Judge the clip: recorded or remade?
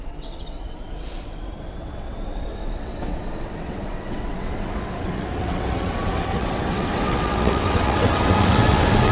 remade